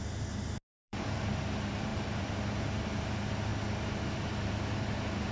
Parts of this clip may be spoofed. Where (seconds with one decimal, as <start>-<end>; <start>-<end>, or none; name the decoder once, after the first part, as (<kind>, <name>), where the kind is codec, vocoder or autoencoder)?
0.8-1.4 (vocoder, BigVGAN v2); 1.9-2.8

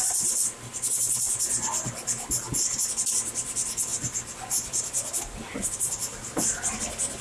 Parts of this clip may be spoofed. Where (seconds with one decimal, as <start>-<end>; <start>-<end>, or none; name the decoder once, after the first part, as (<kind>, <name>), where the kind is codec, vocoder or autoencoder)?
none

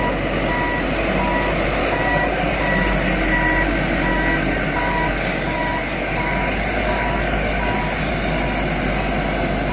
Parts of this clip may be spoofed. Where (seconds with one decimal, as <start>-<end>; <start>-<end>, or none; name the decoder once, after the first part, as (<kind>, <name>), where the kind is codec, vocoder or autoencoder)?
1.8-2.5 (codec, DAC); 4.1-8.1

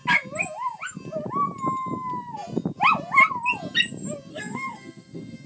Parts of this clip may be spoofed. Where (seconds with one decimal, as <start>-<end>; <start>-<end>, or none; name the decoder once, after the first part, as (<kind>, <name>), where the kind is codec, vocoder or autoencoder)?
4.3-5.5 (codec, SNAC)

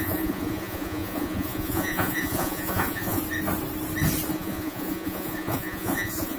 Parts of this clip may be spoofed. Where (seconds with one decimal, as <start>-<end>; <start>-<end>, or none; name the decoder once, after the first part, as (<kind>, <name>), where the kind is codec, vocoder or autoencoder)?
0.0-3.2 (vocoder, Vocos); 4.3-6.4

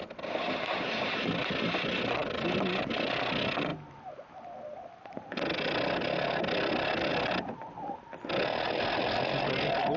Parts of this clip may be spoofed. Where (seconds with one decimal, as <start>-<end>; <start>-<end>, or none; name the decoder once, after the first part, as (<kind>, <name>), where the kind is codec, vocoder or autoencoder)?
none

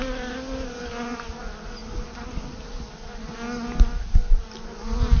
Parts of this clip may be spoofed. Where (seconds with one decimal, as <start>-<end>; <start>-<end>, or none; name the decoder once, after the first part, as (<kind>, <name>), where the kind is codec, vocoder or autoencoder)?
none